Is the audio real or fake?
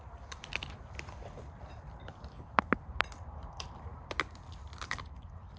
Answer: real